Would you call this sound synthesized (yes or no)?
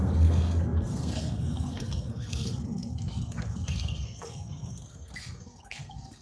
yes